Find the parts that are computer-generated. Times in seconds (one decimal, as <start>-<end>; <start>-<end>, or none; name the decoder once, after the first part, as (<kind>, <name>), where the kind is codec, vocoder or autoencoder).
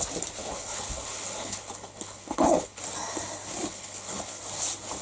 0.4-2.8 (codec, HILCodec); 3.7-4.4